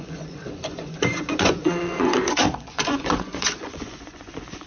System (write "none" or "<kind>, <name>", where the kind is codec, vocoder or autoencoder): vocoder, Vocos